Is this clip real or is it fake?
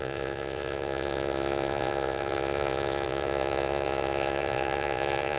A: fake